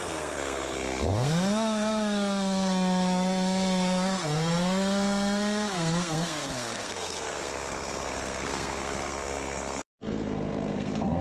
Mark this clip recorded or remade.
remade